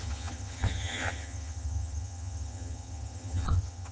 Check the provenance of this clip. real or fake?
fake